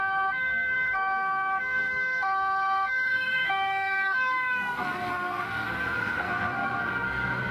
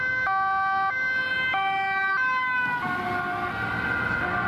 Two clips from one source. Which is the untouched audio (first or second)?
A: second